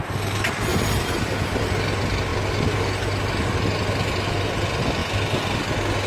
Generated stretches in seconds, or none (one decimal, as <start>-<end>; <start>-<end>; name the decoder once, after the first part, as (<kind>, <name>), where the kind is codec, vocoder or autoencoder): 2.3-3.5 (vocoder, BigVGAN v2)